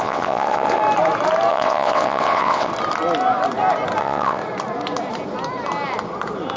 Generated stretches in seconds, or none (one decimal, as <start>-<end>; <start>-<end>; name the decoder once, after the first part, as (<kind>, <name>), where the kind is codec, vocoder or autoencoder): 0.0-0.8 (vocoder, WaveNeXt); 1.5-2.7; 4.0-4.4